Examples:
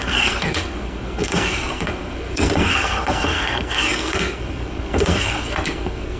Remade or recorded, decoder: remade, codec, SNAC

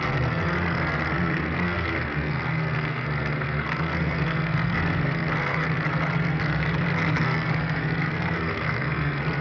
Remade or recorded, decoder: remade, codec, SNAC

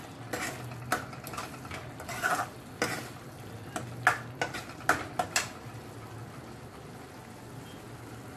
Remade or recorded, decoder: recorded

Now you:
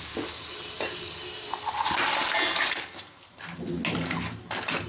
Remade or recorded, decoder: recorded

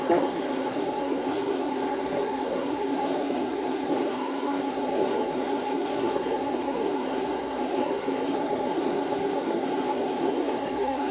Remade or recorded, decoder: remade, codec, SNAC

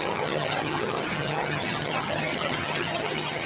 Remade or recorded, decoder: remade, vocoder, HiFi-GAN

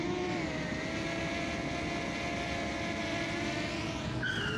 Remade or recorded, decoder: recorded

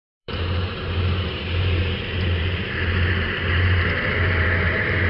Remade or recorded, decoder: remade, vocoder, BigVGAN v2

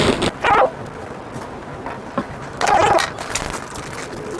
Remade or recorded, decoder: recorded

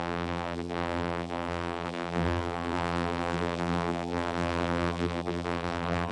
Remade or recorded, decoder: remade, vocoder, BigVGAN v2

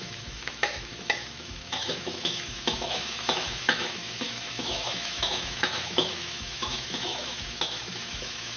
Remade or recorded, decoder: remade, autoencoder, DAC-VAE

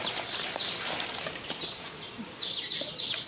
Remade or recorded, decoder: recorded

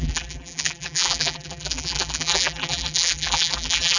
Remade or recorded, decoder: remade, vocoder, BigVGAN v2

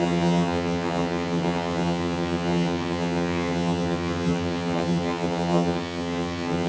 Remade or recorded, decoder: remade, vocoder, HiFi-GAN